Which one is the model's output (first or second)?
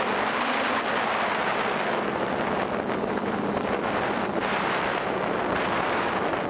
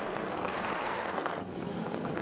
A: second